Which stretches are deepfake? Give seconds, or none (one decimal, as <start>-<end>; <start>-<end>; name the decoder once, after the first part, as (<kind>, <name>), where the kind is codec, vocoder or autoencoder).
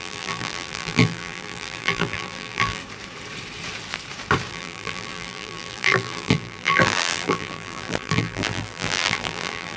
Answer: 0.0-2.8 (vocoder, BigVGAN v2); 4.5-9.8